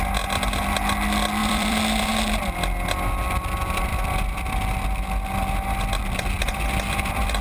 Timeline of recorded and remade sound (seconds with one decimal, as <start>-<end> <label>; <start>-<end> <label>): 0.0-1.4 recorded; 1.4-2.1 remade; 2.1-3.9 recorded; 3.9-4.7 remade; 4.7-6.0 recorded; 6.0-6.6 remade; 6.6-7.4 recorded